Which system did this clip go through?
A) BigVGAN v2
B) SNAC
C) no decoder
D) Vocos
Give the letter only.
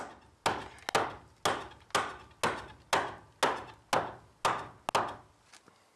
C